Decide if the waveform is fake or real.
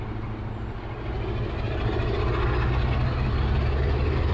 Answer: real